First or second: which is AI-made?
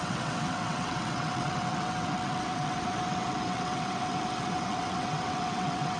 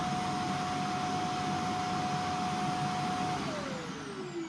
first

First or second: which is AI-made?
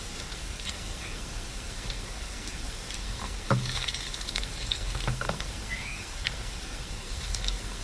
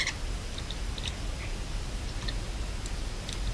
first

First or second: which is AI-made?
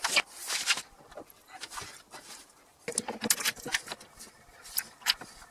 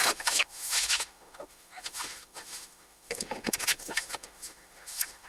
second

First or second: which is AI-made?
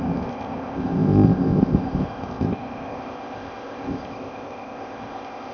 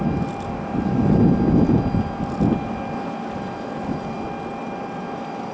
first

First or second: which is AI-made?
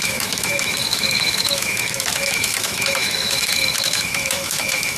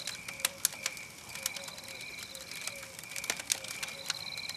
first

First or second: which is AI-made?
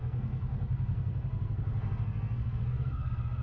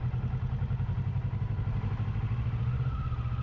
first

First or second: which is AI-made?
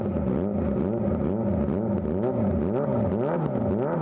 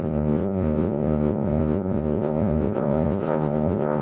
second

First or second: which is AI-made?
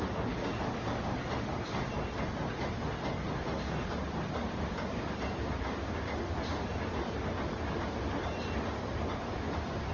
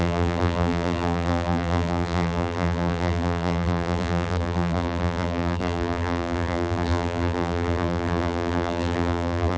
second